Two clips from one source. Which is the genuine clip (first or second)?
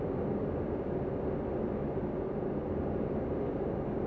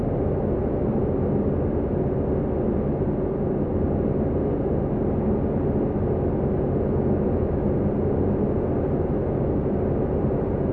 second